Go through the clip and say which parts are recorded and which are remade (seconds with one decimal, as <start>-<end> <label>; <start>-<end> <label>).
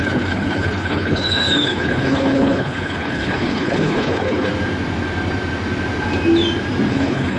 0.0-4.5 remade; 4.5-6.9 recorded; 6.9-7.4 remade